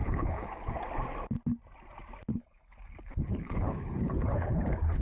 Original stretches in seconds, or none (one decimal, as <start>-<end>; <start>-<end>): 0.8-2.3